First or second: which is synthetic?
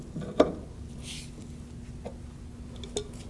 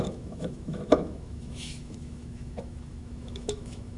second